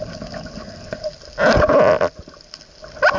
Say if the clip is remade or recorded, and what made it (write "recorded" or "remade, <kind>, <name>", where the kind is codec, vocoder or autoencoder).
recorded